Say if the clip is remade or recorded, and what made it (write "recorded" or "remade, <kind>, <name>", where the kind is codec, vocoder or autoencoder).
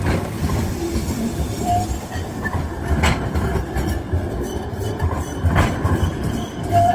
remade, vocoder, BigVGAN v2